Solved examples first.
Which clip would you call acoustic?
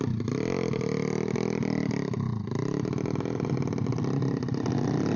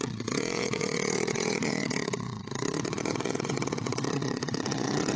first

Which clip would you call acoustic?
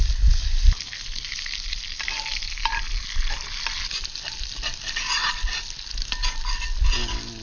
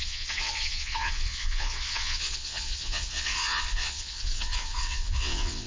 first